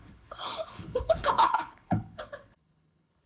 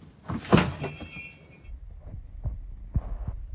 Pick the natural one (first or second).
second